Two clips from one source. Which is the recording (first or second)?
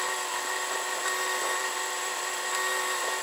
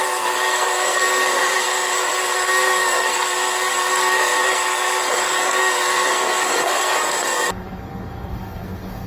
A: first